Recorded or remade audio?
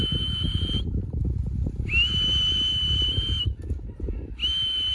recorded